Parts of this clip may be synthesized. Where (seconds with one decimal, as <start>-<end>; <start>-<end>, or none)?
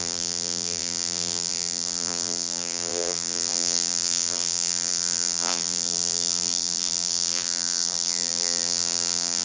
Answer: 0.0-9.4